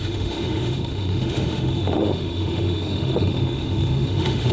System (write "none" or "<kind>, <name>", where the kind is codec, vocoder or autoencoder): autoencoder, DAC-VAE